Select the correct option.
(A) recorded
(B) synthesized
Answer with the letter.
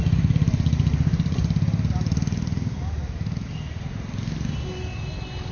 A